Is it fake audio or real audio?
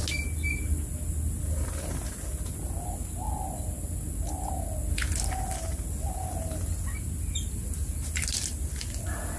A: real